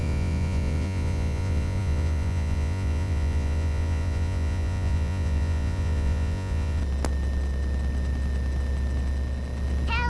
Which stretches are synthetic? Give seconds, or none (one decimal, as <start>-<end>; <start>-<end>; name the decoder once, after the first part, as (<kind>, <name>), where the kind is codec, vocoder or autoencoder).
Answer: 0.0-6.8 (vocoder, Vocos)